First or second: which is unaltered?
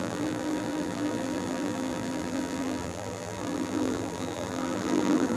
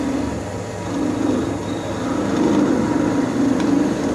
second